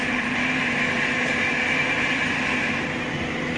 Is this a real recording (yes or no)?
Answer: no